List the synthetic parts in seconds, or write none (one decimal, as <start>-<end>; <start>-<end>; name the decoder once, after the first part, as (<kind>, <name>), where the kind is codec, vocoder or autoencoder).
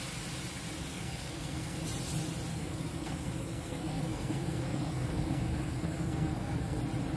0.9-1.8 (codec, SNAC); 2.5-6.8